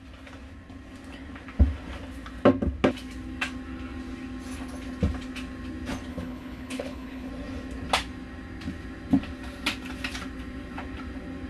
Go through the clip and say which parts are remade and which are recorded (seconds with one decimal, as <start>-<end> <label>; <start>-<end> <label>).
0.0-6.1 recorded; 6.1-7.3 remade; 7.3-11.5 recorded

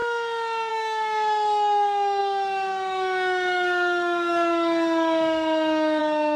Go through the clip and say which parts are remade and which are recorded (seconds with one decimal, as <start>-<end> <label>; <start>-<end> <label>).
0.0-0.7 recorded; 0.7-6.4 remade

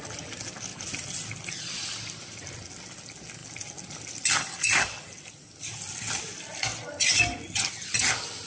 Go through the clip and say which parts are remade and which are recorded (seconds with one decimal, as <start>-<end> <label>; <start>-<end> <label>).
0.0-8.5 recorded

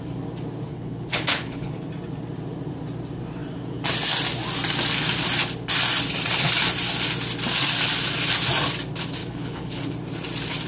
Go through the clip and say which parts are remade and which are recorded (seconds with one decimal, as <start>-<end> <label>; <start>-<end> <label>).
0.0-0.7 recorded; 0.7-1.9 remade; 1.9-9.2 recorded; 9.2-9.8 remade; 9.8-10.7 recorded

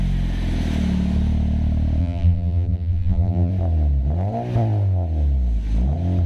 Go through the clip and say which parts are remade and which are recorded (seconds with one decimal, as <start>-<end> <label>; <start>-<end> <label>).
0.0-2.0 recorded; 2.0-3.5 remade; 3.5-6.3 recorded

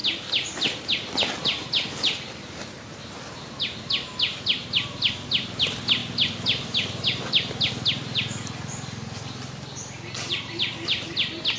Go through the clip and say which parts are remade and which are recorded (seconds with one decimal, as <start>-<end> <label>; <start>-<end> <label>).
0.0-11.6 recorded